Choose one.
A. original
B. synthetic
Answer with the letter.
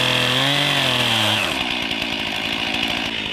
A